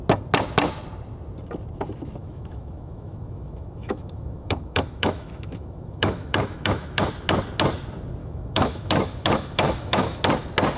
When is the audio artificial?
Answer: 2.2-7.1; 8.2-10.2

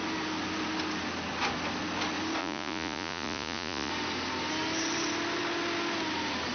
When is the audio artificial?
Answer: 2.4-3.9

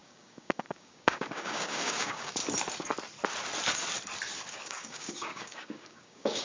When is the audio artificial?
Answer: 0.0-2.4; 4.5-6.4